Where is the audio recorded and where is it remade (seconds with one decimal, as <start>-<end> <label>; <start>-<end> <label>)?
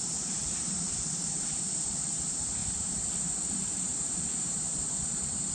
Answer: 0.0-5.5 remade